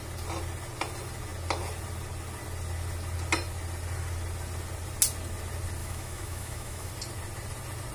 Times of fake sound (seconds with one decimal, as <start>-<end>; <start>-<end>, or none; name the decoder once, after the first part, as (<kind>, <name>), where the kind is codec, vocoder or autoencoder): 5.8-6.9 (autoencoder, DAC-VAE)